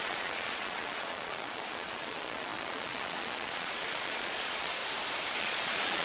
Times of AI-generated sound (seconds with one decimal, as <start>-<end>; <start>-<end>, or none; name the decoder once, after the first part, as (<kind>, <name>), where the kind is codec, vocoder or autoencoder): 0.0-4.8 (vocoder, Vocos); 5.4-6.0